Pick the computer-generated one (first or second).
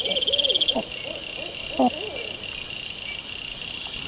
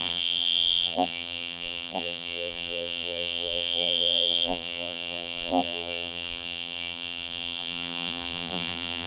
second